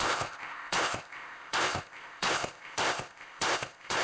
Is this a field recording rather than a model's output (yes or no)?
no